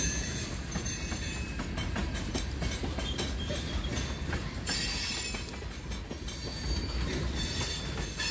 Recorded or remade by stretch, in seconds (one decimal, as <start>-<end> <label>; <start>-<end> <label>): 0.0-8.3 recorded